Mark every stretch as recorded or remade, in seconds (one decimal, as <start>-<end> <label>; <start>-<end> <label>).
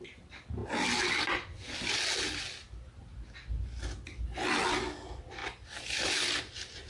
0.0-6.9 recorded